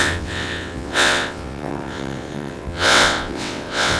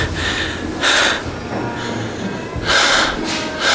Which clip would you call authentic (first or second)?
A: second